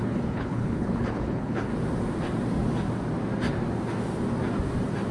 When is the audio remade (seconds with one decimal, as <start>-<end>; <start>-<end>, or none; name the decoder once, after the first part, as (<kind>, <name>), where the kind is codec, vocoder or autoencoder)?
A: 0.0-1.7 (codec, HILCodec)